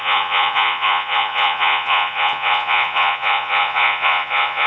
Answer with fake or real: fake